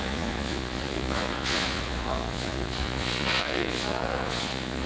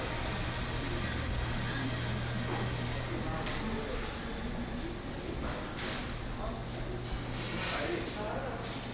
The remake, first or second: first